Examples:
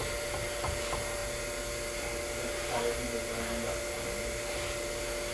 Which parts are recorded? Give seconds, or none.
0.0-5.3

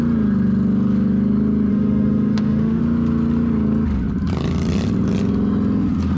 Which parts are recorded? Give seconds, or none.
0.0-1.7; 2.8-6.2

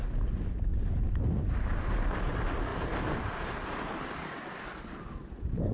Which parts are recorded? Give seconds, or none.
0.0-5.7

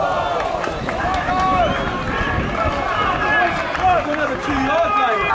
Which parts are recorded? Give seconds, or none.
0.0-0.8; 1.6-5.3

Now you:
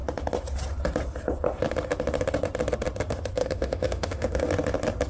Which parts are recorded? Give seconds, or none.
0.0-3.4; 4.5-5.1